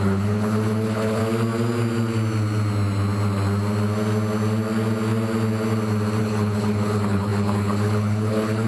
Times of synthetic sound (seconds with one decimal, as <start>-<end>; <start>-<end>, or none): 0.0-1.2; 6.2-8.7